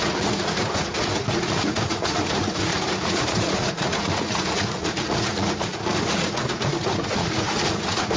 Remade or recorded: remade